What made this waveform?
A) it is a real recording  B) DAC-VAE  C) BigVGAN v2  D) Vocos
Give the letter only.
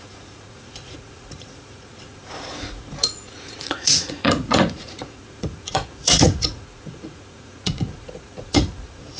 D